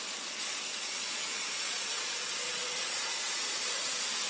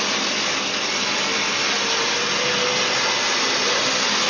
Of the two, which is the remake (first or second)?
first